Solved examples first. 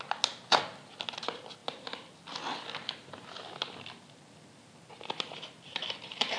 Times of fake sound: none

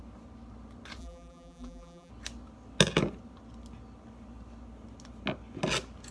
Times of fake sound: 1.0-2.1 (vocoder, BigVGAN v2)

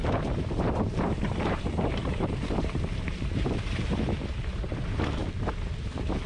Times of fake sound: 0.0-3.8 (vocoder, BigVGAN v2)

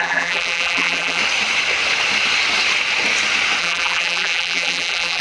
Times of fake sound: 0.0-1.2 (vocoder, BigVGAN v2); 3.6-5.2

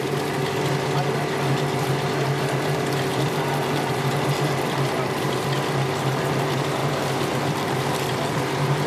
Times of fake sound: 3.1-6.3 (vocoder, BigVGAN v2); 6.8-8.9